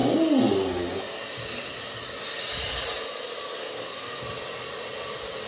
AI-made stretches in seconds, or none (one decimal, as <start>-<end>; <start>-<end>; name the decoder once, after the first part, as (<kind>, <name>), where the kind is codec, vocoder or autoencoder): 3.6-4.2 (codec, SNAC)